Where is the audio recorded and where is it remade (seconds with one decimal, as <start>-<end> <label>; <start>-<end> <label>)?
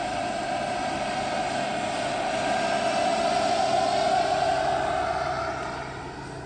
0.0-6.5 recorded